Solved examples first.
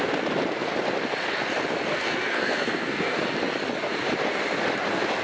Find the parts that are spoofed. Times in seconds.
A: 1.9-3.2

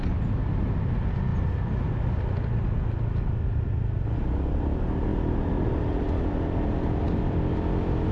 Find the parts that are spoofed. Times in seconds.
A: none

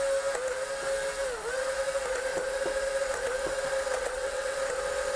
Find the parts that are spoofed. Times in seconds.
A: 3.9-4.6

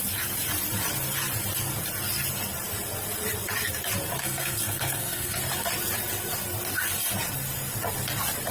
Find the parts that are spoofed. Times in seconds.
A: 4.2-5.4

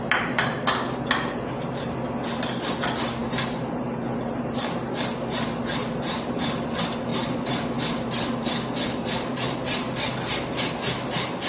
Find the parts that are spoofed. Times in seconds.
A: none

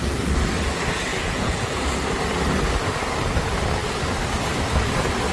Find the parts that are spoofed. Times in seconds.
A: 1.1-1.7

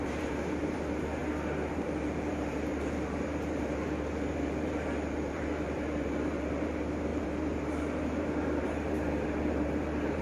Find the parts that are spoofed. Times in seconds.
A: 0.0-1.2; 1.7-10.2

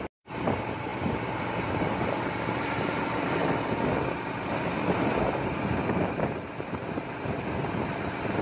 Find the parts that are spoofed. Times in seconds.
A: none